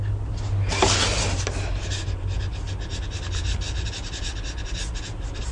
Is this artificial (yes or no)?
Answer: no